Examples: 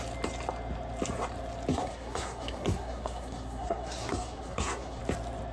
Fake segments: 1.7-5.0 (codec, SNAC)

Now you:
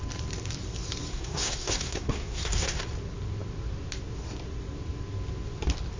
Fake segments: 1.1-2.8 (codec, SNAC)

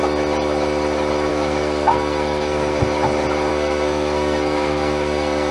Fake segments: 1.3-2.8 (codec, SNAC); 3.5-5.5

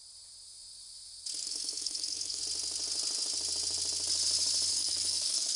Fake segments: 1.4-2.4 (codec, SNAC); 4.7-5.6

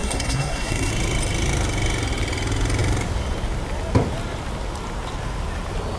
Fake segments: 0.0-0.9 (codec, SNAC)